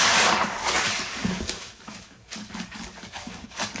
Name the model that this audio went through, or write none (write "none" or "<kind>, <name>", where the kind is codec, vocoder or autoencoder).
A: codec, DAC